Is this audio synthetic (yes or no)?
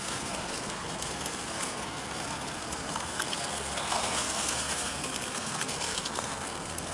yes